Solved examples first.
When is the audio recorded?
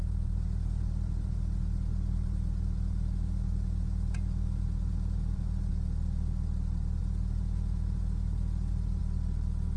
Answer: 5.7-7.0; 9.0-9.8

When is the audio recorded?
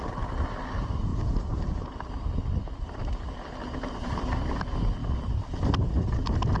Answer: 0.0-6.6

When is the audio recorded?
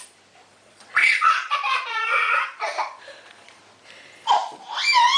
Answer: 0.0-0.5; 3.6-5.2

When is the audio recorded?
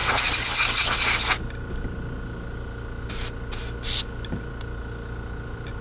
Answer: 0.0-5.8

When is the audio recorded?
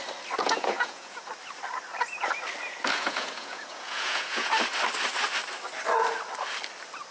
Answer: 0.0-0.4; 1.3-2.9; 4.5-7.1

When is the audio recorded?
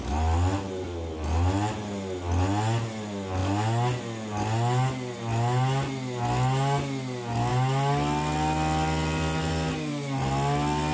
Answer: 0.0-10.9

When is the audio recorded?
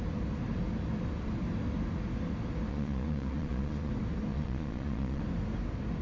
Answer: 0.0-2.7; 3.9-4.3; 5.2-6.0